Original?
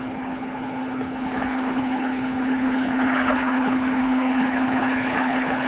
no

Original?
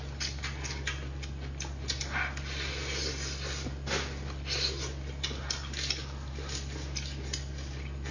yes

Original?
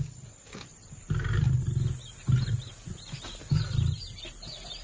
yes